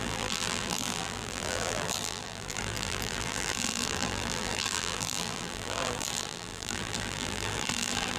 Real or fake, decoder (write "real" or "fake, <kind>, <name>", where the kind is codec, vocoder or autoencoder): fake, vocoder, BigVGAN v2